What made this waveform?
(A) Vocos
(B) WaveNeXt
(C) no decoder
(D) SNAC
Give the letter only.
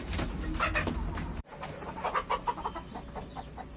C